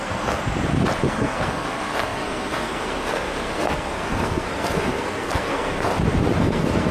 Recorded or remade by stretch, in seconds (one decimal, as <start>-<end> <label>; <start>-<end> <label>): 0.0-0.4 remade; 0.4-1.0 recorded; 1.0-5.9 remade; 5.9-6.4 recorded; 6.4-6.9 remade